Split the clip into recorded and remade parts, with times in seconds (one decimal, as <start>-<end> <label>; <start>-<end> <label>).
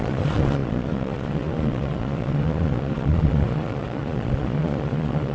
0.0-5.3 remade